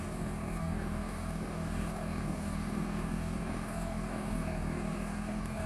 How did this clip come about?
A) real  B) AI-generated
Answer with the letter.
B